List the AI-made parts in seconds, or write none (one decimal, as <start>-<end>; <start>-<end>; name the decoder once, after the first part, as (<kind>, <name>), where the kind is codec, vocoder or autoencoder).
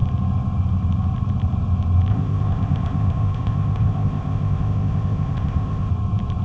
2.1-5.9 (codec, ZipCodec)